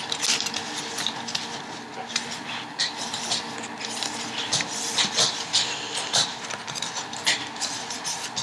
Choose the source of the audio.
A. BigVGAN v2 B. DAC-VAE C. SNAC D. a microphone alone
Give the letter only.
D